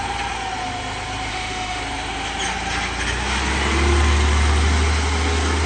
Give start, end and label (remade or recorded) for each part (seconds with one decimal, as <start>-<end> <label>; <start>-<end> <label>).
0.0-1.3 recorded; 1.3-1.8 remade; 1.8-5.7 recorded